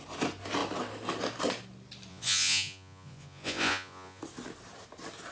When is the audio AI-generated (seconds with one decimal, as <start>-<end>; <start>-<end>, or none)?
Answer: 2.1-4.2